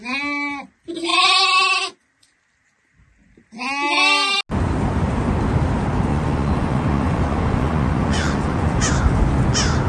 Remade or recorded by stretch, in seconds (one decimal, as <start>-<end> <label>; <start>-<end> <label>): 0.0-6.1 recorded; 6.1-8.9 remade; 8.9-9.9 recorded